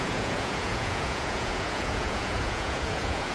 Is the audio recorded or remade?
remade